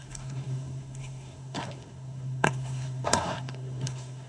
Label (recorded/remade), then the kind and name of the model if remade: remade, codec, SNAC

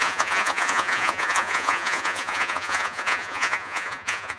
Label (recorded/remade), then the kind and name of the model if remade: remade, vocoder, Vocos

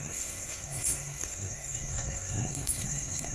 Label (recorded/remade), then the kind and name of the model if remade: remade, codec, SNAC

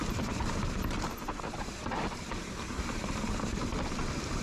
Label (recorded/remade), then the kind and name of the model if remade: remade, vocoder, BigVGAN v2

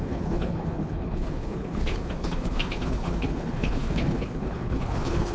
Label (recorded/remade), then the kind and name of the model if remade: remade, codec, HILCodec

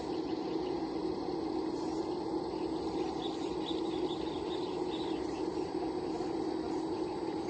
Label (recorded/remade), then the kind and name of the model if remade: recorded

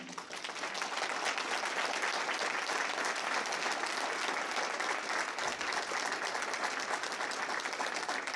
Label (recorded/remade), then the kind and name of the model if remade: recorded